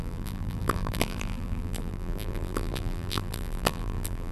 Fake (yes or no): yes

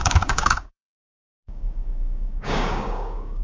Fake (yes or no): yes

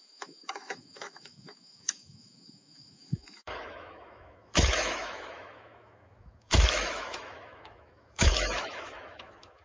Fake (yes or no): yes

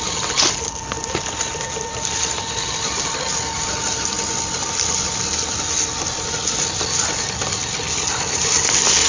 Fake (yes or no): no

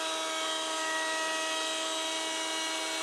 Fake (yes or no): no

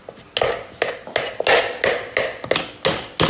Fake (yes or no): no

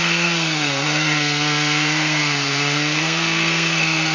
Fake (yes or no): yes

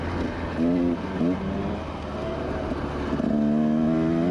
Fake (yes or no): no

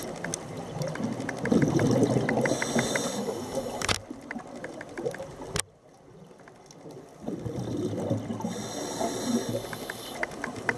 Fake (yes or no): no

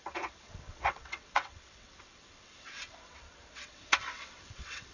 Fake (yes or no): yes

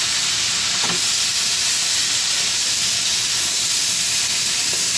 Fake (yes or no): no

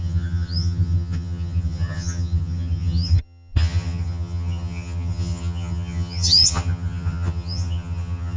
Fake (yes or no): yes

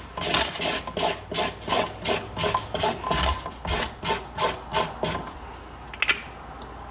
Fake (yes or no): no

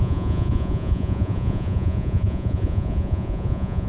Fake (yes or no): yes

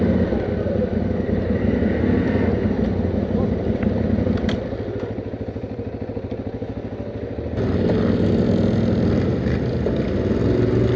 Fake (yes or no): no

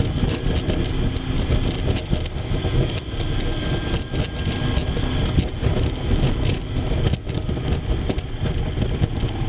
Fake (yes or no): no